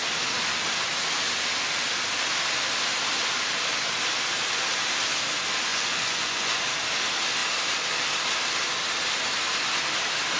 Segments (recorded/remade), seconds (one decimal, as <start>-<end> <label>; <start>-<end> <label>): 0.0-5.7 recorded; 5.7-6.6 remade; 6.6-10.4 recorded